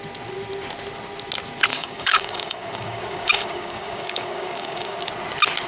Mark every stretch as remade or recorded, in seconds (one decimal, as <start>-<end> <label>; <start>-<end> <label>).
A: 0.0-1.7 recorded; 1.7-5.1 remade; 5.1-5.7 recorded